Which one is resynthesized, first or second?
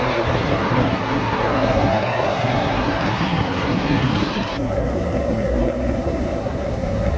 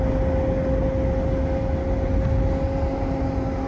first